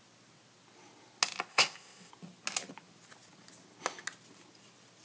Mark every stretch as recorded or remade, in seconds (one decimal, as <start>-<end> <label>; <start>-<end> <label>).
0.0-1.5 recorded; 1.5-2.1 remade; 2.1-5.0 recorded